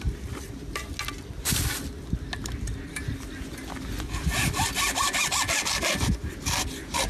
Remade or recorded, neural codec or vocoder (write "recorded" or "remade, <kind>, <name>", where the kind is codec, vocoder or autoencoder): recorded